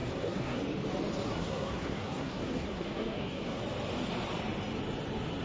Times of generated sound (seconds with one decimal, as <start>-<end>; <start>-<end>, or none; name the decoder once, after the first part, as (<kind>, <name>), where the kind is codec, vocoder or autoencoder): 0.0-0.6 (codec, SNAC); 1.3-3.6